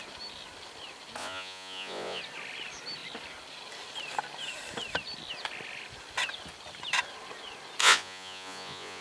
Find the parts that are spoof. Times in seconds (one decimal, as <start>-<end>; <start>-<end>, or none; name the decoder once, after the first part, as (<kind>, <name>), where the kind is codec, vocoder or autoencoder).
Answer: 1.2-2.2 (vocoder, Vocos); 7.8-9.0